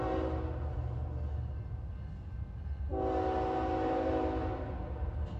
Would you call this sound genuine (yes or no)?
yes